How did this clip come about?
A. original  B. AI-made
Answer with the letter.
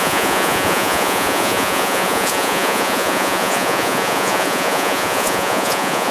B